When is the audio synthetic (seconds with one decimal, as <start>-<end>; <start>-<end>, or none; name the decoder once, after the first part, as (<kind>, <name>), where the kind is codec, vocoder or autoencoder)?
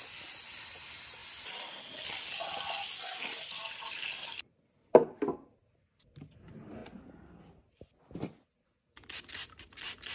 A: none